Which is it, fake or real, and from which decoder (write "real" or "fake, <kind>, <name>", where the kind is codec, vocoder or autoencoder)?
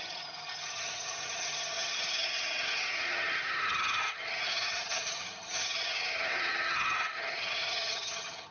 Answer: fake, vocoder, HiFi-GAN